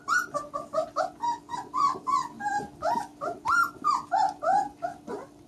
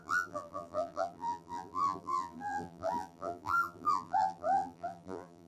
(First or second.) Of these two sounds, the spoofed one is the second